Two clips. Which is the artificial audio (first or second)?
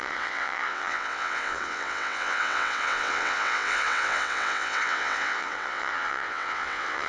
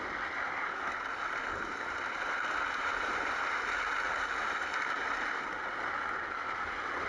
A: first